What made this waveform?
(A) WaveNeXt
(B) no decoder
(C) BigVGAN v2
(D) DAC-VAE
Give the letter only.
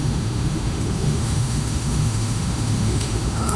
D